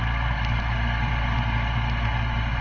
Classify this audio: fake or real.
real